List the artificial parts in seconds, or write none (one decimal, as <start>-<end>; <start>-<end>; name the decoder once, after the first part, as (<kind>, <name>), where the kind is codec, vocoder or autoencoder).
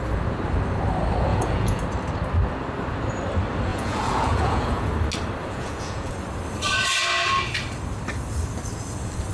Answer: 1.3-1.8 (vocoder, Vocos); 3.7-4.9; 5.4-6.1